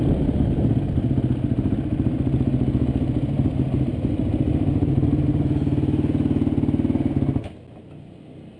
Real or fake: real